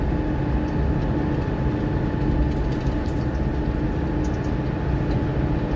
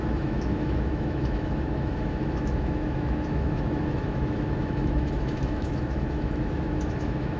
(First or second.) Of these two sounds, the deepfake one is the second